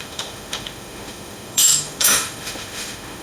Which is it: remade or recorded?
remade